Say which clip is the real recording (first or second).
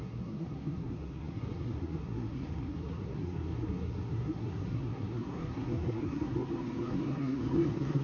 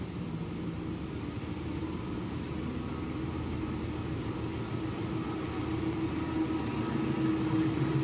second